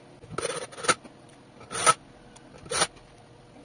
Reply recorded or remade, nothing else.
recorded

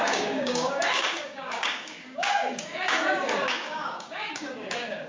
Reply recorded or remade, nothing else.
remade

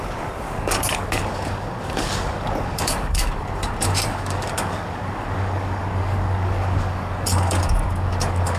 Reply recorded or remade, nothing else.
remade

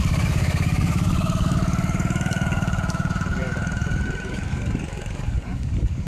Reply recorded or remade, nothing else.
remade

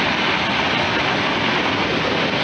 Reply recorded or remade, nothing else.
recorded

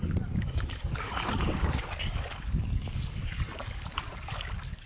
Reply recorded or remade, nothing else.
remade